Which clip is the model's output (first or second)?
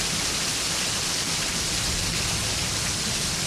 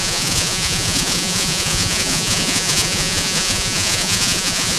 second